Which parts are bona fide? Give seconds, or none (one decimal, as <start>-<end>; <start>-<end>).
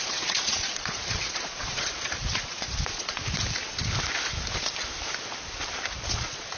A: 3.2-6.1